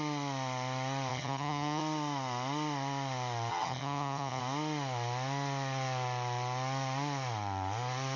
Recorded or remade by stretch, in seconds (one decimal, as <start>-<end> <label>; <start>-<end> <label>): 0.0-1.1 recorded; 1.1-1.8 remade; 1.8-3.5 recorded; 3.5-4.4 remade; 4.4-8.2 recorded

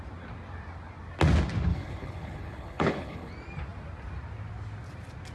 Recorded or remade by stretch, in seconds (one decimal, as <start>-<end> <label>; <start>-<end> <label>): 0.0-1.7 recorded; 1.7-3.3 remade; 3.3-5.3 recorded

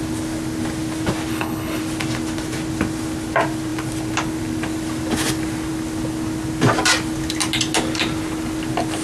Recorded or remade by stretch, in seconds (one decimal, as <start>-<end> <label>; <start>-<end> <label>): 0.0-1.3 recorded; 1.3-1.8 remade; 1.8-9.0 recorded

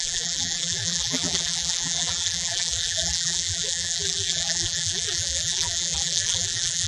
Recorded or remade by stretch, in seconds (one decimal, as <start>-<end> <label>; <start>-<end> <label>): 0.0-6.9 remade